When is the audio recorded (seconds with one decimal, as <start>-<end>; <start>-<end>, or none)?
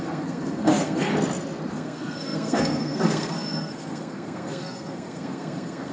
1.1-1.7